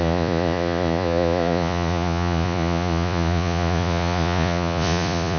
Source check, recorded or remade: remade